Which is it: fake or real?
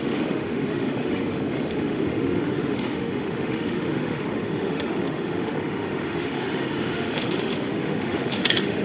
fake